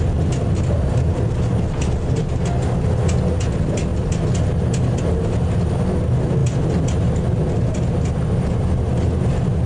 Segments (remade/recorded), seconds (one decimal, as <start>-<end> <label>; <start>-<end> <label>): 0.0-9.7 recorded